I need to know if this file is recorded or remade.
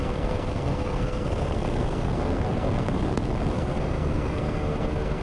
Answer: remade